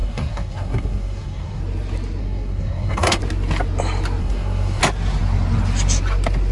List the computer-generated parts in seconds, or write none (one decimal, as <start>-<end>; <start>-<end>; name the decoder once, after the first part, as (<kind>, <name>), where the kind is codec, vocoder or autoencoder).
0.0-1.6 (codec, SNAC); 2.2-3.2; 4.2-4.8

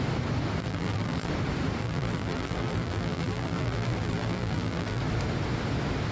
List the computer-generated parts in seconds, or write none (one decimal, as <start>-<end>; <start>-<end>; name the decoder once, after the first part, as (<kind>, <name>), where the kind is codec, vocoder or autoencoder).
0.6-1.3 (vocoder, BigVGAN v2); 1.8-5.0

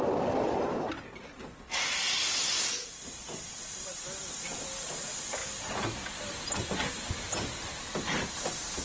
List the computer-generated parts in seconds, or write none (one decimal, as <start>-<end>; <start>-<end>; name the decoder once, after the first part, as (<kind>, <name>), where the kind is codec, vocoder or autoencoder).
none

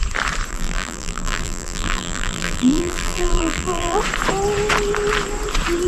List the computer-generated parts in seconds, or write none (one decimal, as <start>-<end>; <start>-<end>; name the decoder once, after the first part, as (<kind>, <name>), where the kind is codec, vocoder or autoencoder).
0.5-4.0 (vocoder, BigVGAN v2)

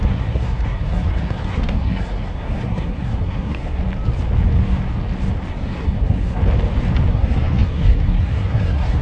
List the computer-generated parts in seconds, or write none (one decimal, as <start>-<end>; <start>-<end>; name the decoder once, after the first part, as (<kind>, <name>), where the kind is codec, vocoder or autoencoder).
0.0-3.8 (codec, SNAC); 5.5-6.4; 7.1-9.0

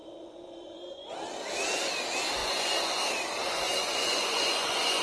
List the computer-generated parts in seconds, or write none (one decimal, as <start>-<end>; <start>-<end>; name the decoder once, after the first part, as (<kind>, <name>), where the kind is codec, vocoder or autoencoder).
0.0-1.1 (vocoder, Vocos); 2.4-3.0; 3.4-5.0

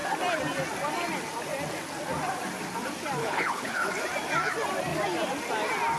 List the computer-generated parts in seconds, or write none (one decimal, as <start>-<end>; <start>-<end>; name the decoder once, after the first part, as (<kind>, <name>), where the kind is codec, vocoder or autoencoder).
3.2-3.9 (codec, HILCodec)

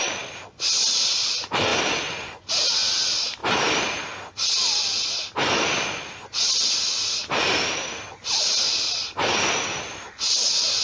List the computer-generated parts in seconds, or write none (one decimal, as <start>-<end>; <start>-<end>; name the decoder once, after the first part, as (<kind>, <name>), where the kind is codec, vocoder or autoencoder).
none